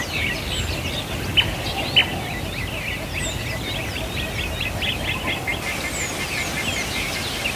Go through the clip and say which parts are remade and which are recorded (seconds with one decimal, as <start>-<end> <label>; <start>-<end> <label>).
0.0-7.6 recorded